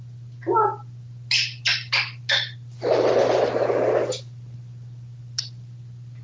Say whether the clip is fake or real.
real